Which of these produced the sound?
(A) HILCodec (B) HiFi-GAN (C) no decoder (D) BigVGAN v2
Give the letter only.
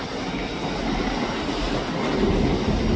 C